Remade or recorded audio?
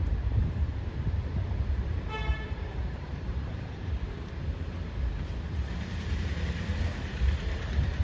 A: remade